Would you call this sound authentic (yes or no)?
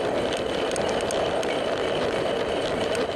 yes